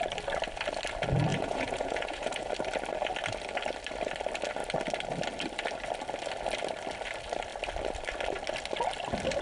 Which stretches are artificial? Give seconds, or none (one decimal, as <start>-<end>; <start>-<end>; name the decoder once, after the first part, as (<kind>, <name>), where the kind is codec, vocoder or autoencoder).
1.3-2.5 (vocoder, Vocos)